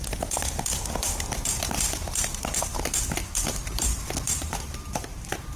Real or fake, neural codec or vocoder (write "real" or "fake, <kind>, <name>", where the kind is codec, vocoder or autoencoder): fake, vocoder, BigVGAN v2